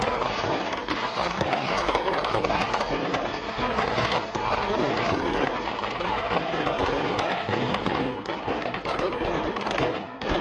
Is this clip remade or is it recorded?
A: remade